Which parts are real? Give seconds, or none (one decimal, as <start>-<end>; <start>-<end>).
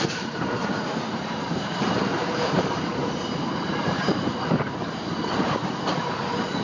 5.2-5.9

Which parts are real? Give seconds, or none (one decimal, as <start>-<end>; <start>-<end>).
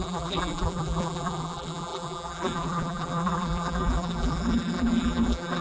none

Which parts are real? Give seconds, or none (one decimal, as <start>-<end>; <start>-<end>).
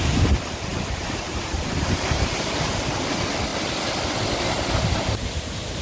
3.5-4.8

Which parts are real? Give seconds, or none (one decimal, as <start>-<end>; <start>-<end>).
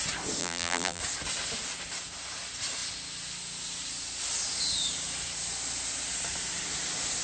0.0-0.4; 1.0-7.2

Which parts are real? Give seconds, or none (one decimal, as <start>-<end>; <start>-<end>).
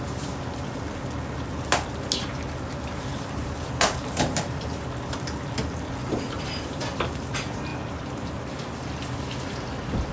0.0-3.1; 4.8-6.0; 7.2-10.1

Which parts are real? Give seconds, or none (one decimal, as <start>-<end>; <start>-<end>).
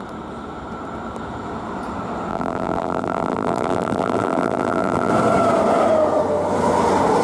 0.0-2.3; 5.1-7.2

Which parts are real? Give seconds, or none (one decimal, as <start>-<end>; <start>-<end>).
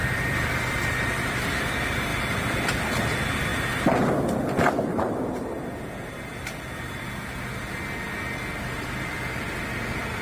1.5-2.1; 2.7-10.2